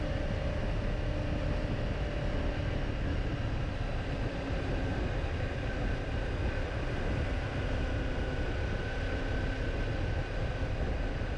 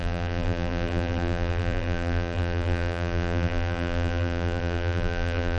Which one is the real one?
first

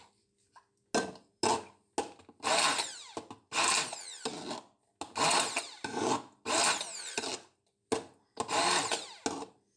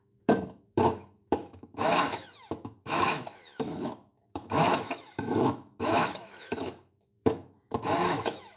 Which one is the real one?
first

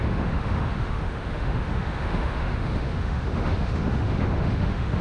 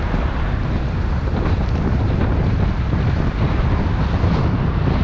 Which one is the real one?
second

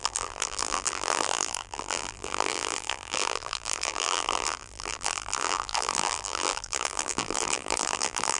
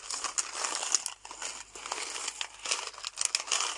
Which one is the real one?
second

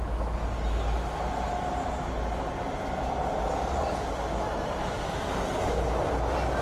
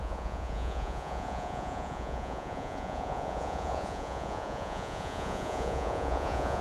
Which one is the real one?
first